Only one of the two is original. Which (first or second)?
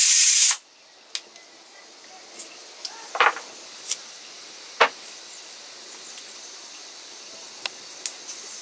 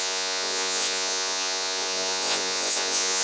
first